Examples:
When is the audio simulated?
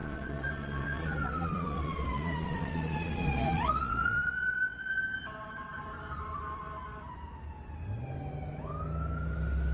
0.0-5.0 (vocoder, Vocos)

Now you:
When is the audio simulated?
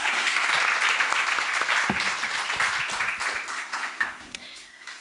0.0-0.5 (codec, SNAC); 3.5-5.0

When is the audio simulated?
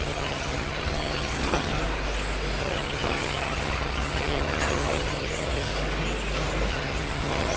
0.0-1.7 (vocoder, HiFi-GAN); 2.6-5.7; 6.7-7.6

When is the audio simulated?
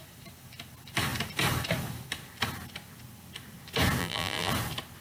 4.0-4.5 (vocoder, BigVGAN v2)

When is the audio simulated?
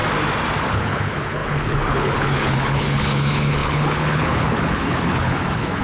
0.7-5.8 (codec, HILCodec)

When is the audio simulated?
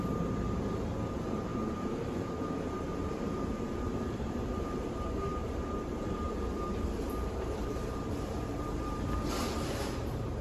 0.0-10.4 (vocoder, BigVGAN v2)